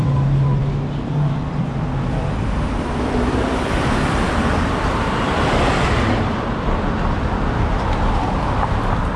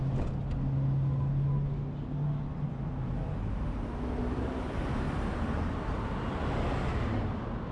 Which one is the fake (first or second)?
first